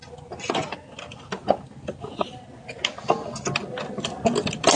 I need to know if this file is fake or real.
real